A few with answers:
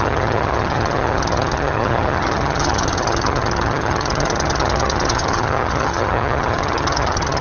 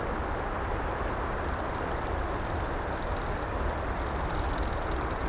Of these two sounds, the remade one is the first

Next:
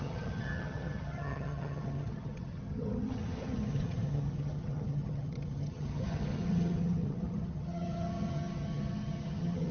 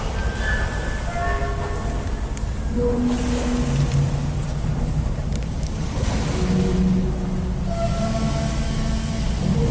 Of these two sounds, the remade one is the first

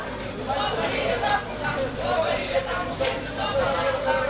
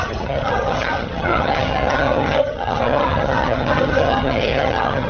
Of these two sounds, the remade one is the second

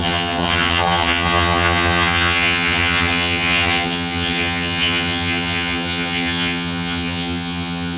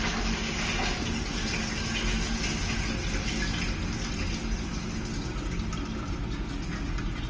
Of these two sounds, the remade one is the first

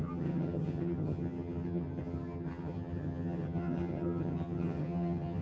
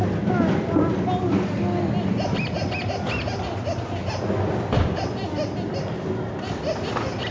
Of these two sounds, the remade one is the first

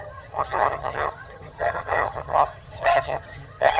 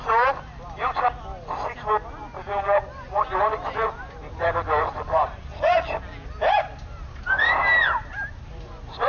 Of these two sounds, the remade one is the first